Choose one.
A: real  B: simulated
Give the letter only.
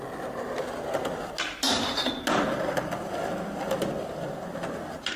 A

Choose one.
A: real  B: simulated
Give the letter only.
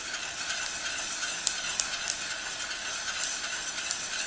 A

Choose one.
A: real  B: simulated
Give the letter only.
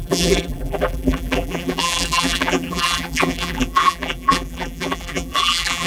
B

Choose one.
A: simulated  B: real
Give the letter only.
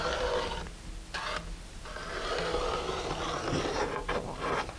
B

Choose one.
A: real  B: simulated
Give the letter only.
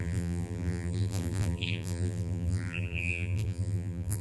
B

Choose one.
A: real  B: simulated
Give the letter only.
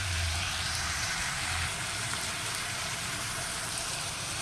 B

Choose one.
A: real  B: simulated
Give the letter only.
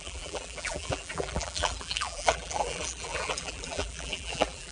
B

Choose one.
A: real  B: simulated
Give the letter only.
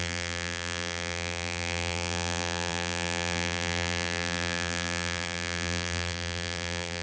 B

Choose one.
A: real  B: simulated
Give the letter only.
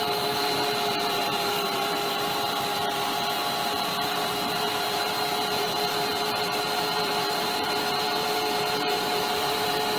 B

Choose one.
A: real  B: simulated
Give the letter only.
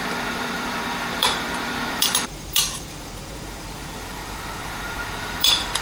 B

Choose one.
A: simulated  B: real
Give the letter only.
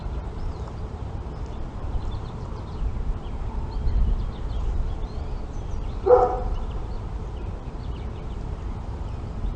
A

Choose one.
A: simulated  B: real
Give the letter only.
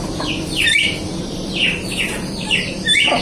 A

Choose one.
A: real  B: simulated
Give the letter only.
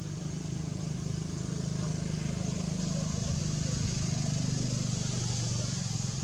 A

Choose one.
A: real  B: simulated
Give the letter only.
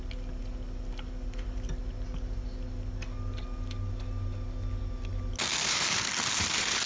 A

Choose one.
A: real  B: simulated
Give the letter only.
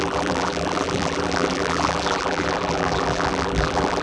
B